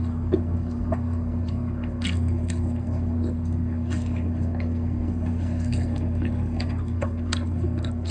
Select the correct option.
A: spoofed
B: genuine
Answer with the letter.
A